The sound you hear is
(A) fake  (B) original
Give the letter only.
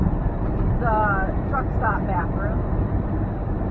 A